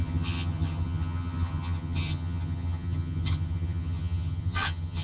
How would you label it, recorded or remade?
remade